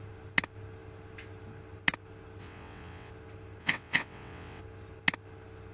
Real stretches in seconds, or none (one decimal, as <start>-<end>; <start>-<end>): 0.0-2.4; 3.1-3.6; 4.6-5.7